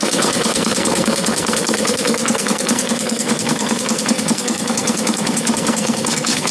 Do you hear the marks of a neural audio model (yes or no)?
yes